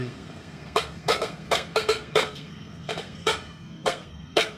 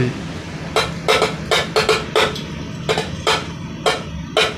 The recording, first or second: second